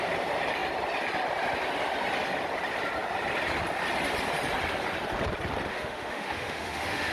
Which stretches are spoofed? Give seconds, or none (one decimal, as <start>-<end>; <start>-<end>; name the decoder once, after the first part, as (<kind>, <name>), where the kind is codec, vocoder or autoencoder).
5.7-7.1 (autoencoder, DAC-VAE)